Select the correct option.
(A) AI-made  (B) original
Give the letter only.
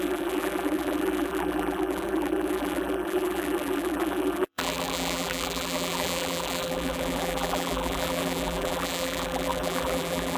A